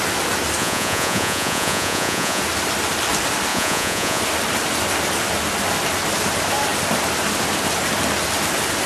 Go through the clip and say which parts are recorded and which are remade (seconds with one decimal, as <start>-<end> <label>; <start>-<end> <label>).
0.0-0.6 recorded; 0.6-2.4 remade; 2.4-3.5 recorded; 3.5-4.2 remade; 4.2-8.9 recorded